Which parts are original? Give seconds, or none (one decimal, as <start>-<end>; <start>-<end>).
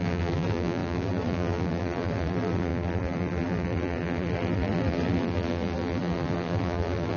none